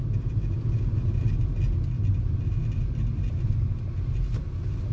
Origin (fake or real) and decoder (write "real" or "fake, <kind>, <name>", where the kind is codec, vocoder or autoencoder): real